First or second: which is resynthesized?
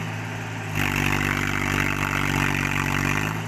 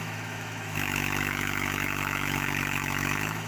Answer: second